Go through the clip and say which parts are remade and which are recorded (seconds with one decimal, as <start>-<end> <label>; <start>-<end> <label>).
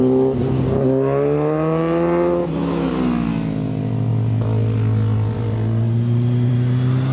0.0-7.1 recorded